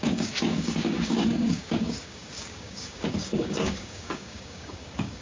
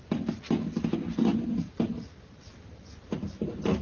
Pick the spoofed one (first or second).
first